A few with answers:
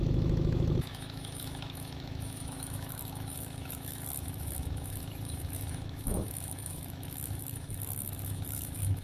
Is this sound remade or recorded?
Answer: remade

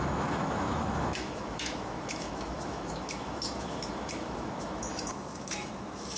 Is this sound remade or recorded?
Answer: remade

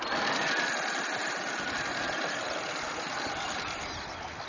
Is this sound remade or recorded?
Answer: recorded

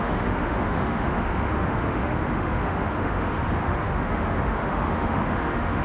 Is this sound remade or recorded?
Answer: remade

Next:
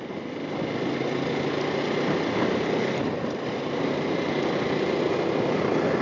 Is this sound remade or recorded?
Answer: recorded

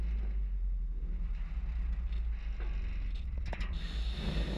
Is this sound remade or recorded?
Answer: recorded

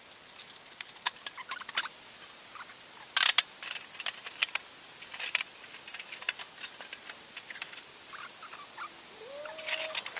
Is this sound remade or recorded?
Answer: recorded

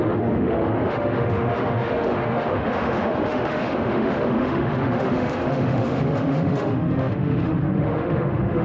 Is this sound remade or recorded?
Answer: remade